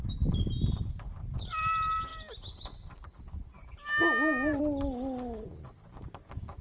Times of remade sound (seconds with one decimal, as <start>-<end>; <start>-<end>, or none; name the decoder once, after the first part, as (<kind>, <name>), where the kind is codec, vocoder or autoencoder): none